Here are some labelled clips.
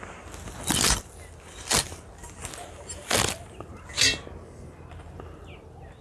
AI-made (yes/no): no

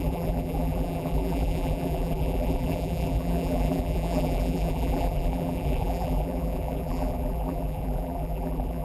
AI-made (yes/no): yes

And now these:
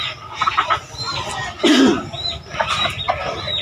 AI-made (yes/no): no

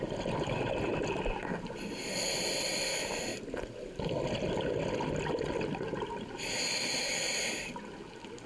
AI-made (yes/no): no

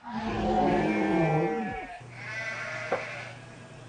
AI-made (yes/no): no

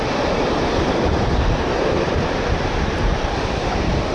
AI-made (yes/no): yes